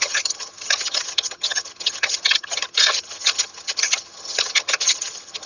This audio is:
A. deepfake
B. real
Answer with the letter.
A